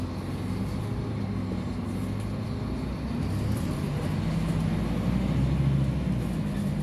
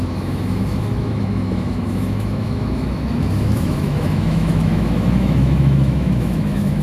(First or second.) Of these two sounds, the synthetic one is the second